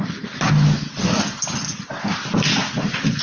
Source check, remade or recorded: recorded